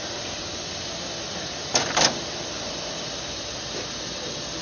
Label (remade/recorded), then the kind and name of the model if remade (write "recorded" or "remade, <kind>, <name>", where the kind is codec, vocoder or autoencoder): recorded